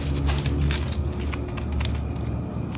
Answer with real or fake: real